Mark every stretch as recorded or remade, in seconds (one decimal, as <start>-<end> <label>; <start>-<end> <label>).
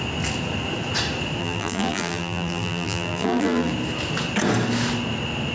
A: 0.0-1.4 recorded; 1.4-3.7 remade; 3.7-5.5 recorded